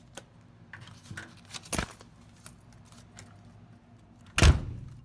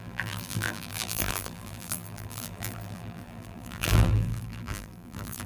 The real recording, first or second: first